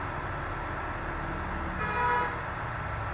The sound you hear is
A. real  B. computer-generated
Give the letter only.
A